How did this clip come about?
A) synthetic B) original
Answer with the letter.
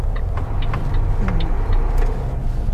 B